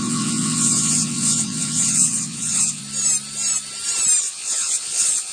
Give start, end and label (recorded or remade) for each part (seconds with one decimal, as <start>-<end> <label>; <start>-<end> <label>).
0.0-2.8 remade; 2.8-4.2 recorded; 4.2-5.3 remade